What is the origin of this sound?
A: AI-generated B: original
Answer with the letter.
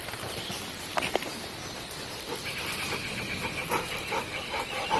B